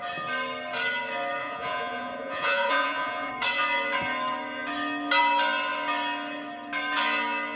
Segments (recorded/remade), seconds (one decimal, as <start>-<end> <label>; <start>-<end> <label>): 0.0-1.4 recorded; 1.4-3.3 remade; 3.3-7.6 recorded